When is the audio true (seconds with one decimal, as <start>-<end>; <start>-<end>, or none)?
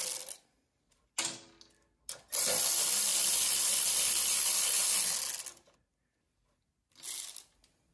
0.0-7.9